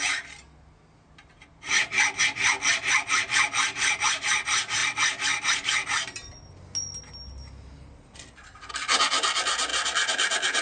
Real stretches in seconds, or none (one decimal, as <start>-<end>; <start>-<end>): 0.0-10.6